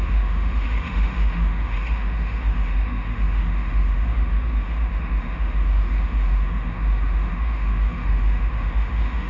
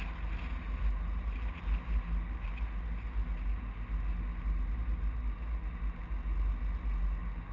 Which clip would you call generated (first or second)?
first